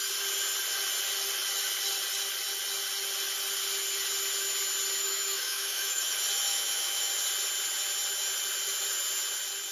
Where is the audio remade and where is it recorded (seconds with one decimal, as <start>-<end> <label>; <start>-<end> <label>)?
0.0-5.0 recorded; 5.0-6.1 remade; 6.1-6.5 recorded; 6.5-7.1 remade; 7.1-9.7 recorded